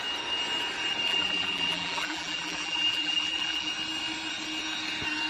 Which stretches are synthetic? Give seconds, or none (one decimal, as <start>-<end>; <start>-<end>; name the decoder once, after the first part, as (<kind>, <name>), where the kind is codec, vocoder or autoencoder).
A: 1.1-3.7 (vocoder, BigVGAN v2)